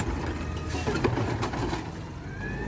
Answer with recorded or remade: recorded